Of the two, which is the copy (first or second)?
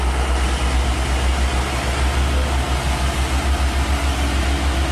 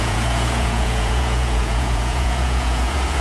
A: second